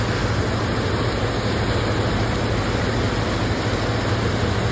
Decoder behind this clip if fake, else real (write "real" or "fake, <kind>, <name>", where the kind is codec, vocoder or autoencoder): real